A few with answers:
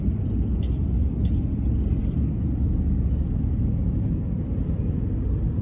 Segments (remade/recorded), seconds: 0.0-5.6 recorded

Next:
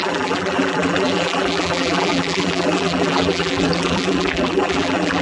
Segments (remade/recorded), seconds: 0.0-5.2 remade

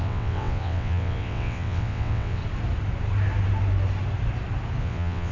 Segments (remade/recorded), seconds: 0.0-2.4 remade; 2.4-4.8 recorded; 4.8-5.3 remade

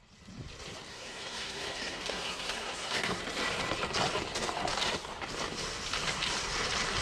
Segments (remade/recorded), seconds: 0.0-0.9 recorded; 0.9-3.2 remade; 3.2-7.0 recorded